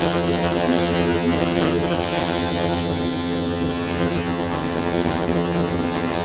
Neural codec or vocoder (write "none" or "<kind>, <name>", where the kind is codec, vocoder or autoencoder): vocoder, HiFi-GAN